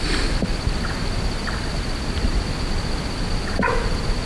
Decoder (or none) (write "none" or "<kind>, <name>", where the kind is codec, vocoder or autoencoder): none